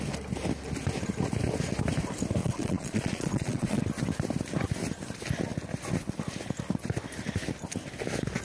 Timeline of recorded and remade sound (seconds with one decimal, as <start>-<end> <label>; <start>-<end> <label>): 0.0-2.4 recorded; 2.4-3.8 remade; 3.8-8.4 recorded